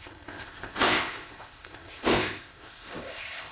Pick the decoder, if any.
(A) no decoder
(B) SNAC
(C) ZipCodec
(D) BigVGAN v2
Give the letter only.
C